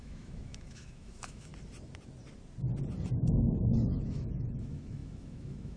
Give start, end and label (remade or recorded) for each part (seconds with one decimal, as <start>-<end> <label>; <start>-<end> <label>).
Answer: 0.0-1.5 remade; 1.5-3.2 recorded; 3.2-5.8 remade